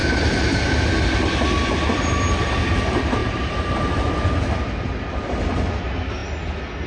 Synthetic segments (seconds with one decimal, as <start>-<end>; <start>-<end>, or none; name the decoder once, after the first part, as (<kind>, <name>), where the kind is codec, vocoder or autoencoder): 0.0-0.9 (vocoder, BigVGAN v2); 3.2-3.9